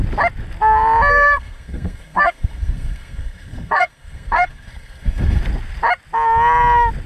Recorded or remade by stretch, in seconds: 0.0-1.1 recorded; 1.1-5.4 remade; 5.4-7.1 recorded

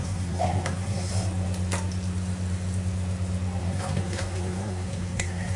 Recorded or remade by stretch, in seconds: 0.0-1.1 remade; 1.1-3.6 recorded; 3.6-5.6 remade

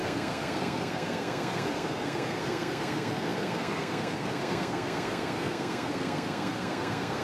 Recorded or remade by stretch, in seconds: 0.0-7.2 remade

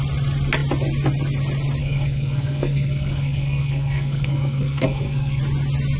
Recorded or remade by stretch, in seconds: 0.0-1.8 recorded; 1.8-5.4 remade; 5.4-6.0 recorded

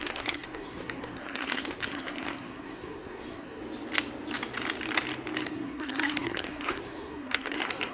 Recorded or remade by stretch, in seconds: 0.0-3.6 remade; 3.6-5.4 recorded; 5.4-7.9 remade

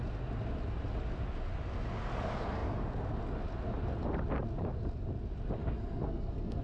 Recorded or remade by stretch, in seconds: 0.0-5.6 recorded; 5.6-6.6 remade

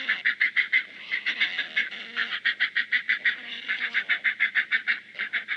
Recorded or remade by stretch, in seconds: 0.0-5.6 recorded